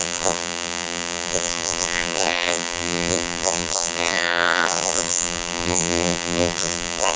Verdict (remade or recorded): remade